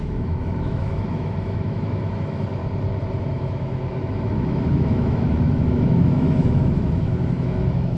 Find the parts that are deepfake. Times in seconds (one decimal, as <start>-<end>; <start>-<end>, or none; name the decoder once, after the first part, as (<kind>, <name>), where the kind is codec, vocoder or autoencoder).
0.0-2.6 (autoencoder, DAC-VAE); 3.3-8.0